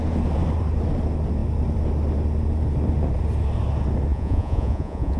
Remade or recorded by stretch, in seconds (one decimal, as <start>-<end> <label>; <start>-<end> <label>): 0.0-4.1 recorded; 4.1-5.2 remade